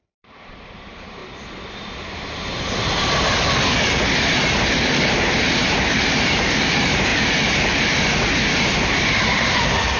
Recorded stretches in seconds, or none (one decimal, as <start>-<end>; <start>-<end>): 1.2-5.1; 7.1-7.8